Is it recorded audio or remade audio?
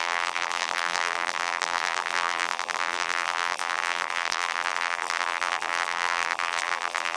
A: remade